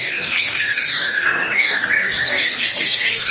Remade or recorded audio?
remade